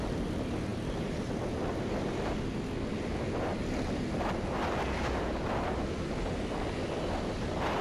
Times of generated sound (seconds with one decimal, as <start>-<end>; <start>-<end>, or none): none